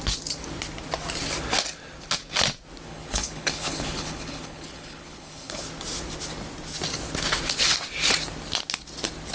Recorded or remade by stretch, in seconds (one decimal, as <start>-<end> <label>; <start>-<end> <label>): 0.0-2.9 recorded; 2.9-5.6 remade; 5.6-9.3 recorded